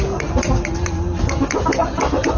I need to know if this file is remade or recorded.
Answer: recorded